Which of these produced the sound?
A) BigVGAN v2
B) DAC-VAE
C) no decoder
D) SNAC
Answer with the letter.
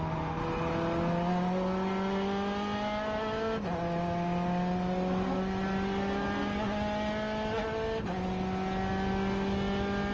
C